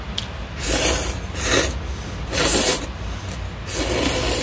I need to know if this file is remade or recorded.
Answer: recorded